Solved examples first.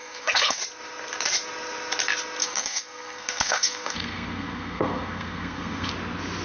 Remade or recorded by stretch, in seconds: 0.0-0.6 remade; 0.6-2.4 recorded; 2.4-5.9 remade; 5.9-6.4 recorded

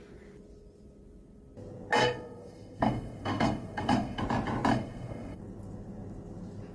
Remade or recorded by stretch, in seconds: 0.0-2.0 recorded; 2.0-4.2 remade; 4.2-4.7 recorded; 4.7-5.4 remade; 5.4-6.7 recorded

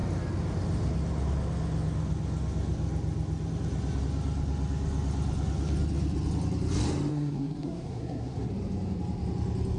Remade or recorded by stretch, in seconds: 0.0-7.1 recorded; 7.1-8.5 remade; 8.5-9.8 recorded

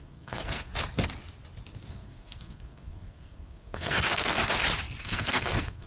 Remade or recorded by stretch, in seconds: 0.0-0.7 remade; 0.7-1.9 recorded; 1.9-4.4 remade; 4.4-5.0 recorded; 5.0-5.9 remade

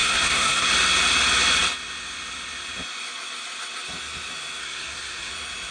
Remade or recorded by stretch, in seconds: 0.0-0.7 remade; 0.7-4.6 recorded; 4.6-5.3 remade; 5.3-5.7 recorded

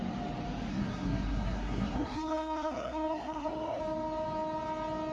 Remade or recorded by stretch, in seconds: 0.0-0.7 recorded; 0.7-3.8 remade; 3.8-5.1 recorded

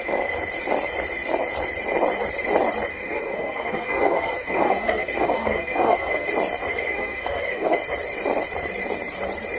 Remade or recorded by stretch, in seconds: 0.0-2.9 recorded; 2.9-6.3 remade; 6.3-6.7 recorded; 6.7-7.8 remade; 7.8-9.6 recorded